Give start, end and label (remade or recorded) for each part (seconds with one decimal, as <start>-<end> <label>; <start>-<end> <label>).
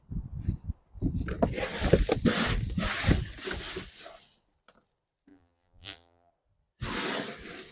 0.0-5.3 recorded; 5.3-6.3 remade; 6.3-7.7 recorded